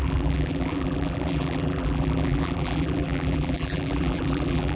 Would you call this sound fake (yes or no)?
yes